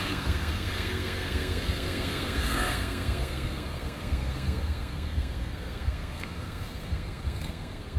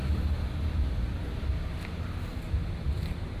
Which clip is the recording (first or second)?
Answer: second